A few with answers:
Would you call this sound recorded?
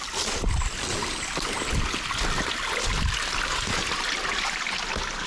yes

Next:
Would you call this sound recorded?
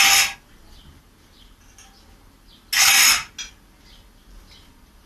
yes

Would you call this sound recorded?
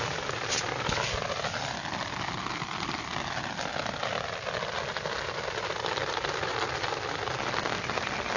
yes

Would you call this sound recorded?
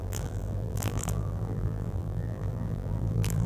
no